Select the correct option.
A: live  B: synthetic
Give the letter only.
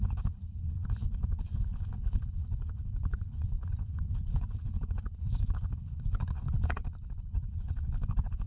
B